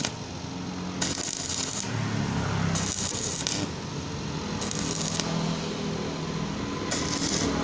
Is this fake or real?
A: real